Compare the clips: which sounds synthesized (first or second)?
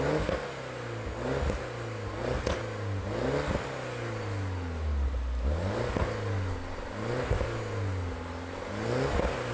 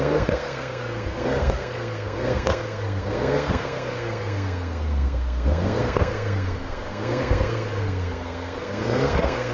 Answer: second